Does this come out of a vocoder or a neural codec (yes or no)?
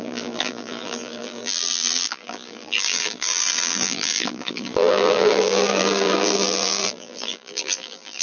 yes